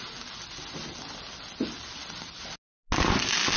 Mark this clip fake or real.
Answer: real